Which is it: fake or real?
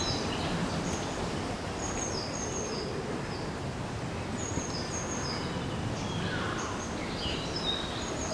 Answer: real